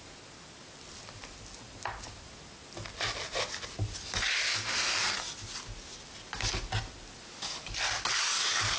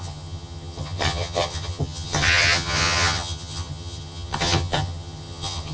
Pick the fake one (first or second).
second